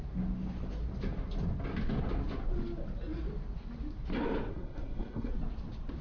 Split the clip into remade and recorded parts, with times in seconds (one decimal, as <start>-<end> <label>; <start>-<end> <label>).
0.0-4.5 recorded; 4.5-5.3 remade; 5.3-6.0 recorded

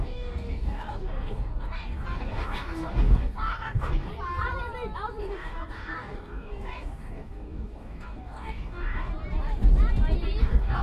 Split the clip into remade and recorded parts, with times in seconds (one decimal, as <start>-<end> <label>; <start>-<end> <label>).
0.0-4.1 remade; 4.1-5.2 recorded; 5.2-9.1 remade; 9.1-10.4 recorded; 10.4-10.8 remade

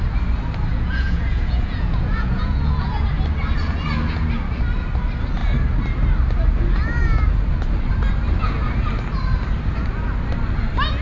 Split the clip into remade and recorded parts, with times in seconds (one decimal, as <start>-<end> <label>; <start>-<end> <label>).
0.0-0.7 recorded; 0.7-3.1 remade; 3.1-11.0 recorded